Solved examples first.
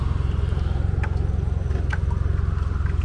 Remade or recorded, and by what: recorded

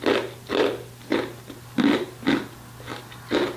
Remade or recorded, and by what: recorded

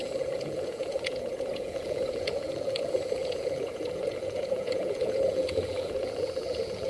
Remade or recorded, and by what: remade, vocoder, Vocos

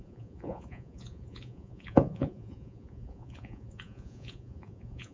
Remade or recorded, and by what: remade, vocoder, Vocos